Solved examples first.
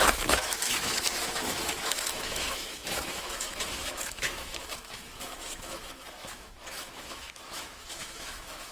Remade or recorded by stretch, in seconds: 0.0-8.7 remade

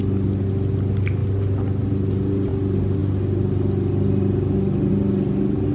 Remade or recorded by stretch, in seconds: 0.0-5.7 recorded

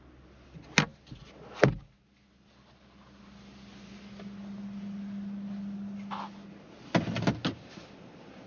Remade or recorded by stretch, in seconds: 0.0-8.5 recorded